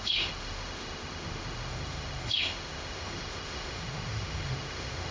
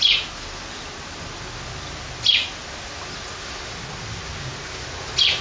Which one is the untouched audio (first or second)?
second